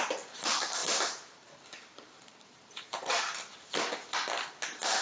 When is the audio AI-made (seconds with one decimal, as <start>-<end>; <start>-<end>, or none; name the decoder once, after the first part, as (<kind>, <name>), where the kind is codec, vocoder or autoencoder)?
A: 0.8-3.2 (vocoder, BigVGAN v2)